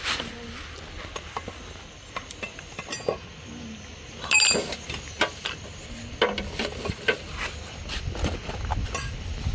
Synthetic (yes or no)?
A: no